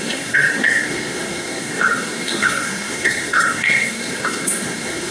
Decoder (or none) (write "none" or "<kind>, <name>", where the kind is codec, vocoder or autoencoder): codec, SNAC